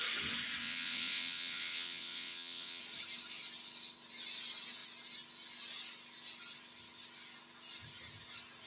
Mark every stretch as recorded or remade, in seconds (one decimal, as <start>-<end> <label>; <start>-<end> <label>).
0.0-0.6 recorded; 0.6-2.8 remade; 2.8-8.7 recorded